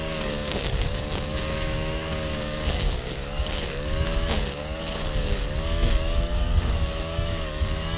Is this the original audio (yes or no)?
no